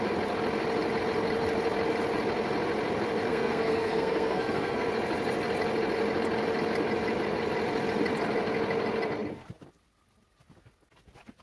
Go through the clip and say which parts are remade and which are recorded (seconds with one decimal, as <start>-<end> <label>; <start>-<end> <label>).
0.0-3.3 recorded; 3.3-4.9 remade; 4.9-11.4 recorded